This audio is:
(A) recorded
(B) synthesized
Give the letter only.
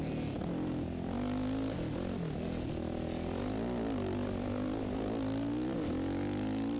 A